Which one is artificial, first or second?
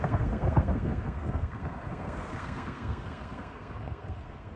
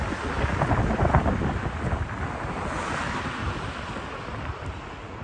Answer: first